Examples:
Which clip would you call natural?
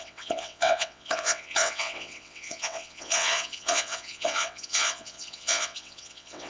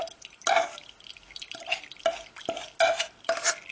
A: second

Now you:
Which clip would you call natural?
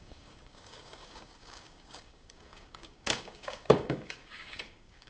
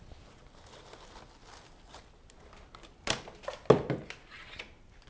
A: second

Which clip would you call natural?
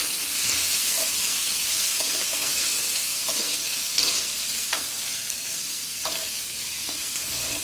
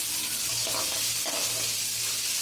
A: second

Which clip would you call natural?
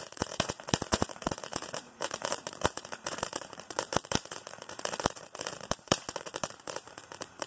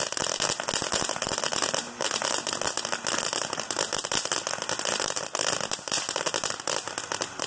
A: second